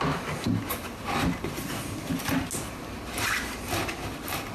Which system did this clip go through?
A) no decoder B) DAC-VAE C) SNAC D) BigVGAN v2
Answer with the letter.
A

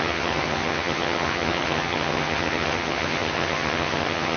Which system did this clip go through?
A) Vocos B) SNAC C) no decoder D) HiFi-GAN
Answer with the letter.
D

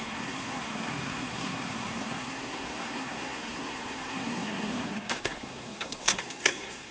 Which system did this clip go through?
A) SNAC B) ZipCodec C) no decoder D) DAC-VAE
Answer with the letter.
A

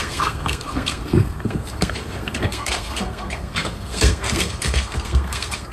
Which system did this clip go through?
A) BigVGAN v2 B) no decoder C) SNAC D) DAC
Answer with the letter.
C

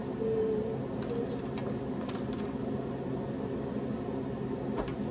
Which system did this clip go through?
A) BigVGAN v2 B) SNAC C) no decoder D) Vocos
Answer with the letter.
C